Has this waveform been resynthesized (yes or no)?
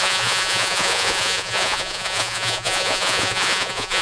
yes